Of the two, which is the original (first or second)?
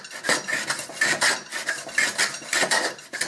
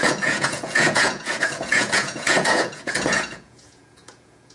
first